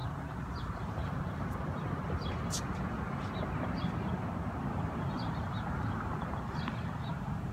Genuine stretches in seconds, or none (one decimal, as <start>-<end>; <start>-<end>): 1.0-4.7